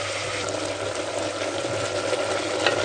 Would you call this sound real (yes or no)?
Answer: yes